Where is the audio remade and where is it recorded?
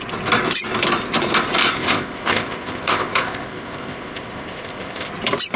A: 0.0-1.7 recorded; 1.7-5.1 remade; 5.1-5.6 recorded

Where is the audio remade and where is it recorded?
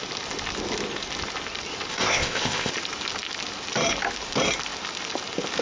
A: 0.0-1.9 recorded; 1.9-2.7 remade; 2.7-5.6 recorded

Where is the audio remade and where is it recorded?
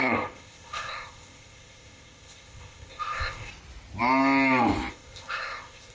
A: 0.0-3.5 remade; 3.5-4.9 recorded; 4.9-5.9 remade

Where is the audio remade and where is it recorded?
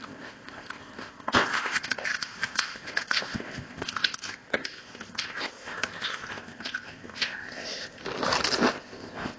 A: 0.0-8.0 remade; 8.0-8.7 recorded; 8.7-9.4 remade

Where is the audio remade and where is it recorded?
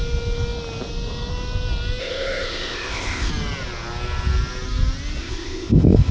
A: 0.0-2.0 recorded; 2.0-3.3 remade; 3.3-5.2 recorded; 5.2-6.1 remade